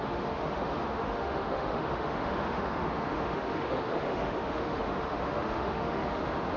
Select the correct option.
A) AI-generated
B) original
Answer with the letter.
A